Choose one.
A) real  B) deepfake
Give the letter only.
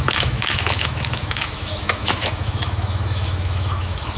B